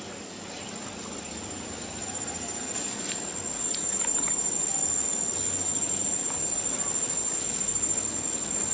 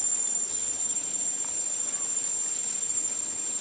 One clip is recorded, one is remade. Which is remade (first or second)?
second